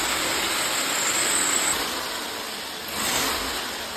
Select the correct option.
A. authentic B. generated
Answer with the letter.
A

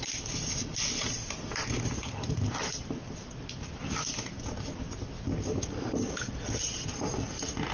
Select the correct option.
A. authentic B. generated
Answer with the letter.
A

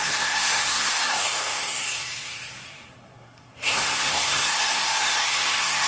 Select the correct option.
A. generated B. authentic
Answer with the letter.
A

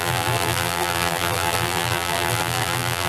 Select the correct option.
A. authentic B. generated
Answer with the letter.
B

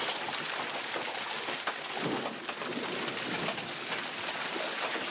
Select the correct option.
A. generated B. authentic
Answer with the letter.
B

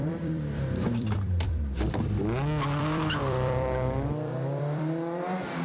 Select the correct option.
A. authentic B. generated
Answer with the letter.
B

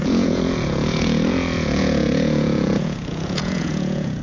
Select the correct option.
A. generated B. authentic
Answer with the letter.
A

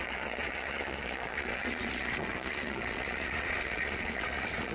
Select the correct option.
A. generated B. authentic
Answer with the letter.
A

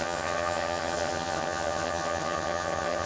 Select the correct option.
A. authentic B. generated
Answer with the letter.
B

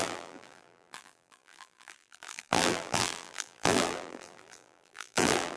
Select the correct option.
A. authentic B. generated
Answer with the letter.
B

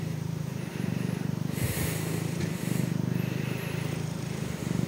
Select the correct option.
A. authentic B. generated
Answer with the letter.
B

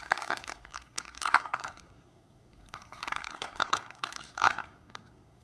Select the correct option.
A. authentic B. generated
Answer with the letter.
B